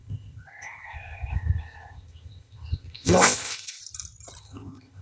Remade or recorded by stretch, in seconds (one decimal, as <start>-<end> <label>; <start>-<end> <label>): 0.0-3.8 remade; 3.8-4.4 recorded; 4.4-5.0 remade